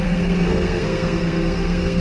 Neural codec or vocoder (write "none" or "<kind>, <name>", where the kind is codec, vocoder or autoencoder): codec, SNAC